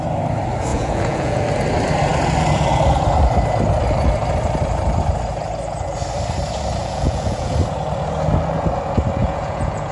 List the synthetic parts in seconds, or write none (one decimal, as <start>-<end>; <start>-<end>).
0.7-1.4; 6.8-7.5; 9.2-9.9